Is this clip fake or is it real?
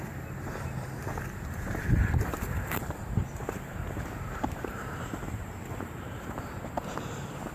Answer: fake